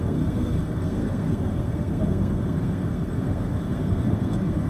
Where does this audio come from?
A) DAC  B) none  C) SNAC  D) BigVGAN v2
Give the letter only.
C